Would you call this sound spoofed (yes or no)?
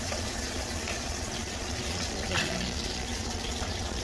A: yes